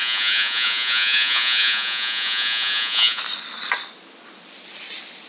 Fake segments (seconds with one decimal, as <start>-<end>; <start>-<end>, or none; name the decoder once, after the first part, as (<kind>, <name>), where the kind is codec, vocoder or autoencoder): 0.0-3.2 (vocoder, Vocos)